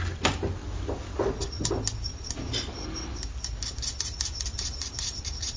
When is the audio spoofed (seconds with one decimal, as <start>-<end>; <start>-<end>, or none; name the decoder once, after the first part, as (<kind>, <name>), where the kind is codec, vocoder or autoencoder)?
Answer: none